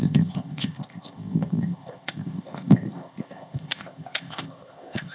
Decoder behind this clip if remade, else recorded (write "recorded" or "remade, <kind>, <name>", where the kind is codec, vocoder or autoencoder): remade, codec, ZipCodec